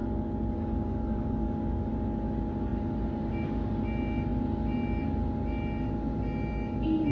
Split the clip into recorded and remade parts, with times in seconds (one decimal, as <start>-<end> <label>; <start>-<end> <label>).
0.0-1.9 remade; 1.9-7.1 recorded

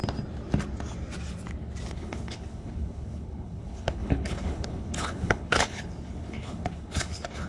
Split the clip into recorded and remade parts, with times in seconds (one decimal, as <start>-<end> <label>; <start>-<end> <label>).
0.0-1.9 recorded; 1.9-7.5 remade

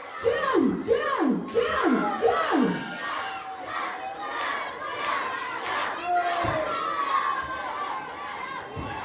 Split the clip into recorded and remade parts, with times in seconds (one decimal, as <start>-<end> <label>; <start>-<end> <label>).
0.0-9.0 recorded

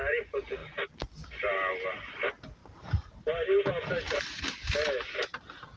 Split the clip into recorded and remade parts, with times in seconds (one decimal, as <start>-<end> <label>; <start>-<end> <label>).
0.0-2.6 recorded; 2.6-4.2 remade; 4.2-5.8 recorded

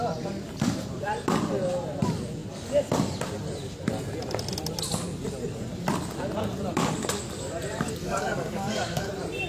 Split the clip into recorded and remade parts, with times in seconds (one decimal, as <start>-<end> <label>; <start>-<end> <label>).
0.0-8.0 recorded; 8.0-9.1 remade; 9.1-9.5 recorded

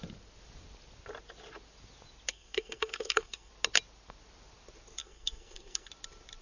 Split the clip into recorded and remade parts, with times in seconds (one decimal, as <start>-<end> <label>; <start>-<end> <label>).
0.0-2.3 recorded; 2.3-3.5 remade; 3.5-5.0 recorded; 5.0-5.9 remade; 5.9-6.4 recorded

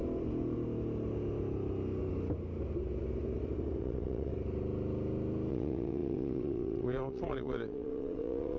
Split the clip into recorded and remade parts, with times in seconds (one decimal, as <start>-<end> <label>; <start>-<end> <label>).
0.0-3.8 recorded; 3.8-4.3 remade; 4.3-5.5 recorded; 5.5-8.6 remade